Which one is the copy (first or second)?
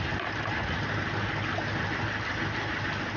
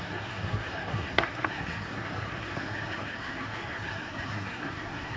second